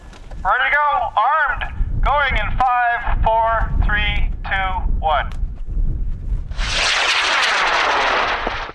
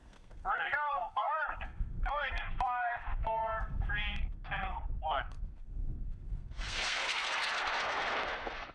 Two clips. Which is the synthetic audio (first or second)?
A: second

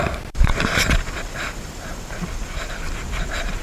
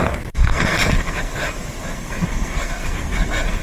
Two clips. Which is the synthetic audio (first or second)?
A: second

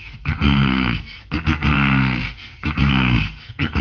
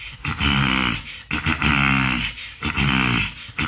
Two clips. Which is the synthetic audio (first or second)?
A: first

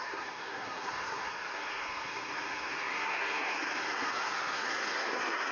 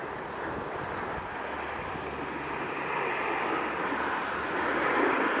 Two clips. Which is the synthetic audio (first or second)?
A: first